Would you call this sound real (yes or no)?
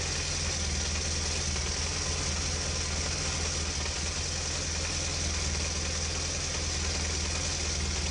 yes